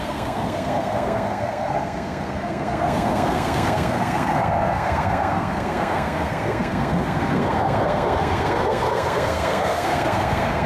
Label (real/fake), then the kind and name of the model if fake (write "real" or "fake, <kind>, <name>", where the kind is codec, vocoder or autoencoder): fake, codec, SNAC